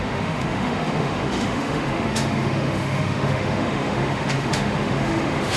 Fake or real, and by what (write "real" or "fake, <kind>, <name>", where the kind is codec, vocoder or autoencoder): fake, autoencoder, DAC-VAE